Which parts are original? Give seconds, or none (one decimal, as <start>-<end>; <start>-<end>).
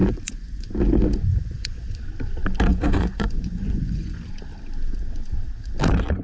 0.7-1.3; 2.0-2.7; 4.3-6.2